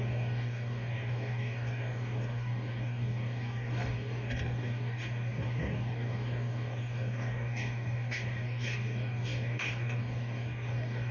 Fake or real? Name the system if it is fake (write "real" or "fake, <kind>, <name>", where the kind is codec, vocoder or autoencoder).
fake, codec, DAC